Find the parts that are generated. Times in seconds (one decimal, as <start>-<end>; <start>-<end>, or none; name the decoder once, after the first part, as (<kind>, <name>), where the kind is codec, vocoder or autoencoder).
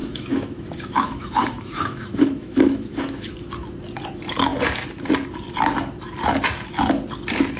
0.0-3.3 (autoencoder, DAC-VAE)